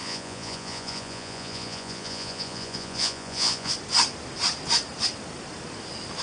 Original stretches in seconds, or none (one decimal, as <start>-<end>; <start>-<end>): 3.7-6.2